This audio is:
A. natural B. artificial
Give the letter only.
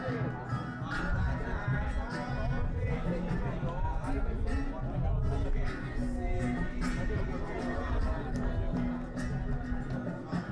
A